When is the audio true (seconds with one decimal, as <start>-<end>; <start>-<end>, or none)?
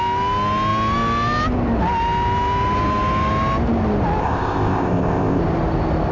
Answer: 0.0-4.2; 5.4-6.1